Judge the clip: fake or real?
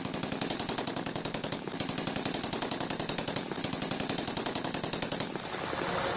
real